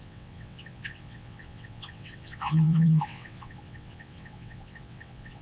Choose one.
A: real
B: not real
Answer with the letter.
B